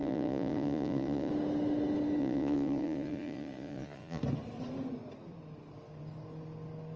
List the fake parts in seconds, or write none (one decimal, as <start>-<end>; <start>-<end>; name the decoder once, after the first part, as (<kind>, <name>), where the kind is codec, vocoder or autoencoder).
0.0-1.3 (vocoder, Vocos); 2.2-4.2

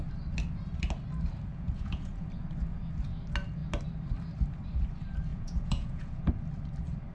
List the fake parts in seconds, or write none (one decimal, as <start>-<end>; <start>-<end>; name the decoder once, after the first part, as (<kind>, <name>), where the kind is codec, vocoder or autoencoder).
1.5-2.3 (vocoder, Vocos); 5.3-6.3

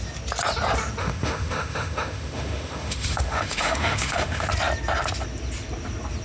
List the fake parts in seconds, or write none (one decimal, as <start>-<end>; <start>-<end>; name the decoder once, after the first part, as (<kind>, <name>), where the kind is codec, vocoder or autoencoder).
1.0-4.5 (autoencoder, DAC-VAE)

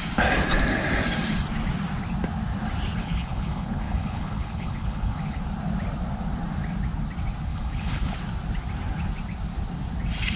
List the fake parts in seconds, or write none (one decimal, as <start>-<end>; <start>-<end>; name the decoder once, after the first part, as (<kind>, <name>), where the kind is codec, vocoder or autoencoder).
3.0-5.4 (codec, HILCodec); 7.5-8.1

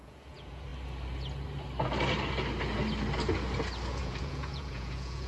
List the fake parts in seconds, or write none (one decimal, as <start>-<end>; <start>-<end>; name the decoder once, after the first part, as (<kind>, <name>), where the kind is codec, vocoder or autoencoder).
0.0-0.7 (vocoder, Vocos); 3.9-5.3